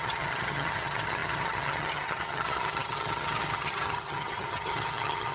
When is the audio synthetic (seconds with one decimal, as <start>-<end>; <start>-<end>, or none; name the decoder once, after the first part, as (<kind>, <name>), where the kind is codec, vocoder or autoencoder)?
0.0-5.3 (vocoder, HiFi-GAN)